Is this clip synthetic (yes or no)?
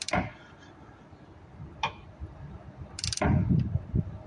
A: yes